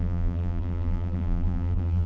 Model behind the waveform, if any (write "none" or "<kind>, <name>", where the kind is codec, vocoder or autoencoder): vocoder, BigVGAN v2